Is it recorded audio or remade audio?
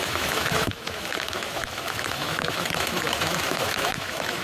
remade